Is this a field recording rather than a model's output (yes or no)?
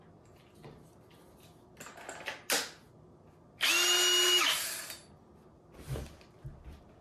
yes